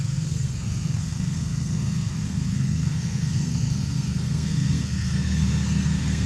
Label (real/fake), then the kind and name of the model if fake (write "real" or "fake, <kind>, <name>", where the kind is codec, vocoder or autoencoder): fake, codec, SNAC